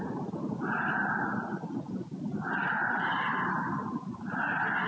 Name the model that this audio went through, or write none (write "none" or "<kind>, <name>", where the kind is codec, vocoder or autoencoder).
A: none